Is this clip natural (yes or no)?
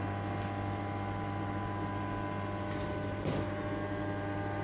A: yes